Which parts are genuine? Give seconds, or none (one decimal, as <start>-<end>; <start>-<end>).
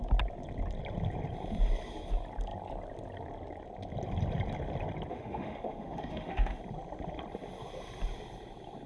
0.0-5.1; 6.6-8.9